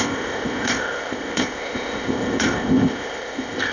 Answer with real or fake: fake